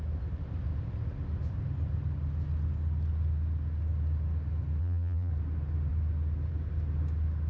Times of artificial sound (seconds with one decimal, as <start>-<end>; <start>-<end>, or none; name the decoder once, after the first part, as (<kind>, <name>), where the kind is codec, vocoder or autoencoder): 4.8-5.3 (vocoder, BigVGAN v2)